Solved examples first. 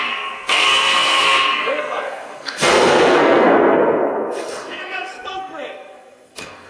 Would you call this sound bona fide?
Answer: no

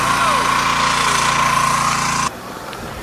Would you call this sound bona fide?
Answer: yes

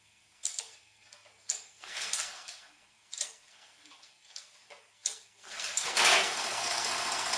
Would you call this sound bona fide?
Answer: no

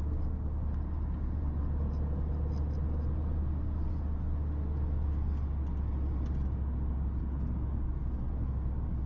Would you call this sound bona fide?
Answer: yes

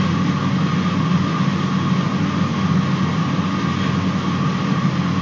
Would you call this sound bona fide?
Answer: yes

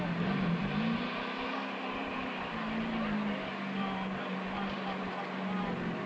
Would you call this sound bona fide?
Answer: yes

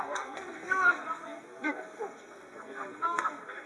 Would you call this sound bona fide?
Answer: no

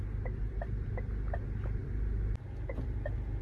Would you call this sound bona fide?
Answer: yes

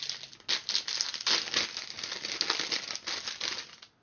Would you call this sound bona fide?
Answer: yes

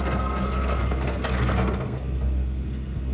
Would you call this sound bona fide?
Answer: no